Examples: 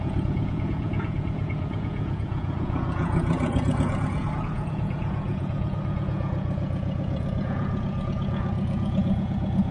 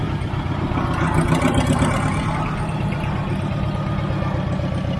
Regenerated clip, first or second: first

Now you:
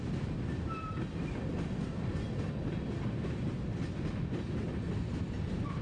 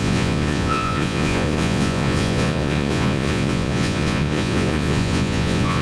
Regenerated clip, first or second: second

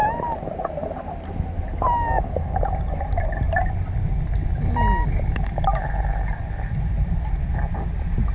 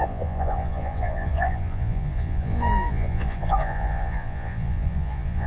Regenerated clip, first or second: second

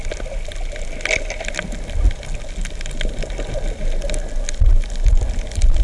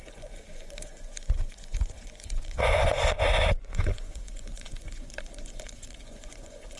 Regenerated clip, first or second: second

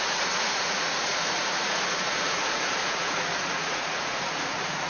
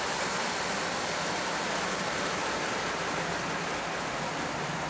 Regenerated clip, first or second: first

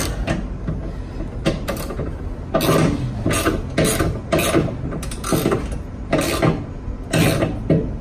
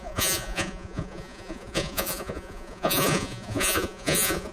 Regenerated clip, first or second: second